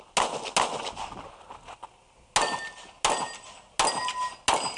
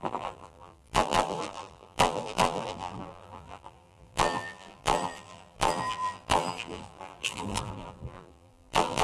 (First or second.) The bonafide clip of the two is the first